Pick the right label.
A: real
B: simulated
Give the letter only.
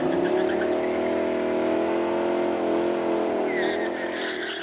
A